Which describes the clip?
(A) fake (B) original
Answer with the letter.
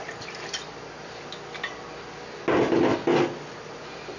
B